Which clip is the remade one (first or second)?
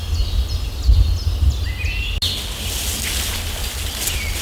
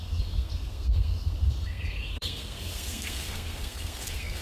second